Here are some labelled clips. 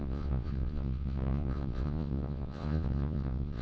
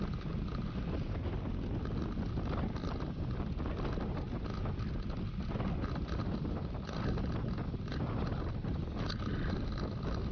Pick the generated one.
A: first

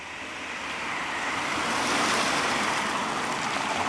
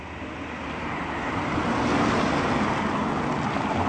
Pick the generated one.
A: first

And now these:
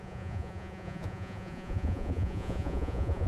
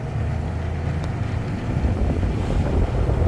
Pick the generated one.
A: first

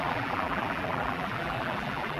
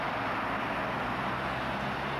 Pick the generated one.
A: first